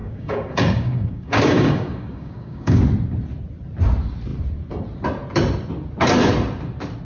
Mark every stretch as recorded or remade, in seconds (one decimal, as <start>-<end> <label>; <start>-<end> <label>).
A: 0.0-2.8 remade; 2.8-7.0 recorded